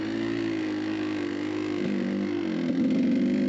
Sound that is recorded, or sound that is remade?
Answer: recorded